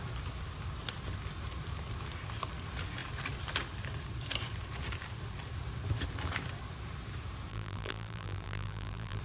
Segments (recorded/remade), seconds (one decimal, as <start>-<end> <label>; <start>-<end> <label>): 0.0-7.5 recorded; 7.5-9.2 remade